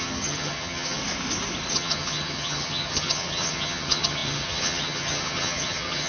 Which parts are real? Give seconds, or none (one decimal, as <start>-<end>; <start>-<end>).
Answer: 1.0-1.7